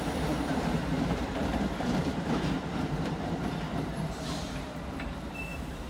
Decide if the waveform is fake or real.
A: fake